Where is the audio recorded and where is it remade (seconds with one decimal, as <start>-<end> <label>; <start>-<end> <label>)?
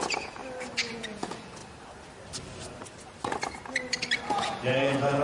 0.0-0.4 remade; 0.4-0.9 recorded; 0.9-1.6 remade; 1.6-4.3 recorded; 4.3-5.2 remade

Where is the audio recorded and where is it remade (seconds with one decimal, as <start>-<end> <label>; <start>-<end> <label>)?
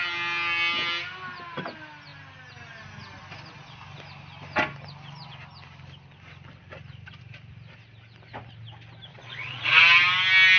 0.0-9.1 recorded; 9.1-9.8 remade; 9.8-10.6 recorded